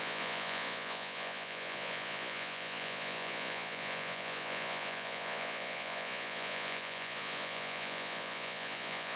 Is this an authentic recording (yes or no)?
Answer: no